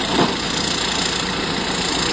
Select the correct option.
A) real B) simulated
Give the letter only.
A